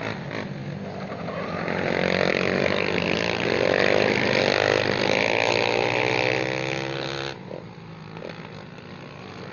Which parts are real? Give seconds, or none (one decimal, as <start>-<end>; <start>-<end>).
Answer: 0.0-9.5